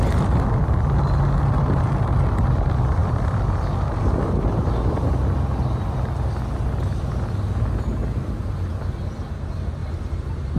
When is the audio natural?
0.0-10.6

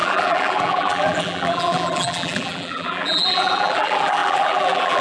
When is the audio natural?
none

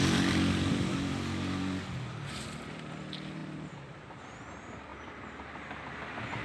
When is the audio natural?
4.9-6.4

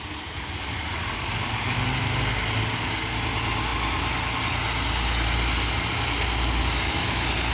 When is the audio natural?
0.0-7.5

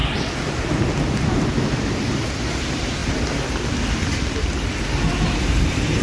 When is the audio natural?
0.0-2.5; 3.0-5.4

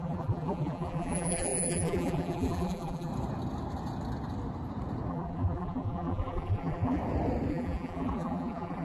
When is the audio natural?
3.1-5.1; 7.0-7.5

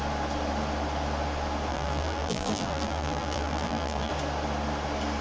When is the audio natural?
0.0-1.7; 4.1-5.2